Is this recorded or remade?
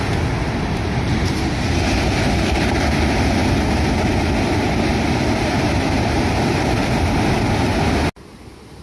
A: recorded